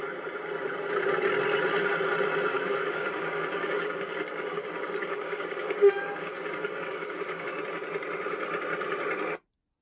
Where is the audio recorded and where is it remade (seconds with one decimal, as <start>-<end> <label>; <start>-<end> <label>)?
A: 0.0-2.5 recorded; 2.5-7.6 remade; 7.6-9.8 recorded